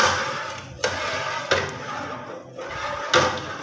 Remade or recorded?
recorded